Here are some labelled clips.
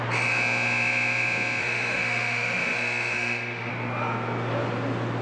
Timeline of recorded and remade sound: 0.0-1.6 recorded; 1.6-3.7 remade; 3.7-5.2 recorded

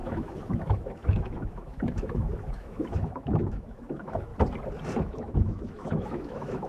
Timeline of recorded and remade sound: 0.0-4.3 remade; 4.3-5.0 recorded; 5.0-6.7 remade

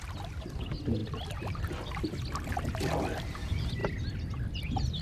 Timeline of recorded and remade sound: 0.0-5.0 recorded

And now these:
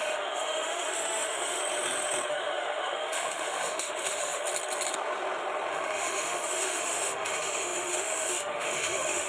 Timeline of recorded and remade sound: 0.0-1.6 remade; 1.6-2.3 recorded; 2.3-4.4 remade; 4.4-5.7 recorded; 5.7-9.3 remade

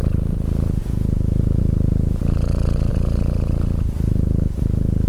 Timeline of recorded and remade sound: 0.0-5.1 recorded

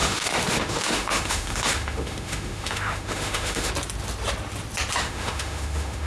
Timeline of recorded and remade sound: 0.0-3.7 remade; 3.7-5.0 recorded; 5.0-6.1 remade

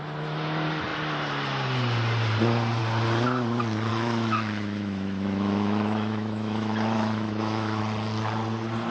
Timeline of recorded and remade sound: 0.0-3.9 recorded; 3.9-7.8 remade; 7.8-8.9 recorded